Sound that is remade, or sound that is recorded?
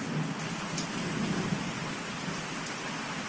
recorded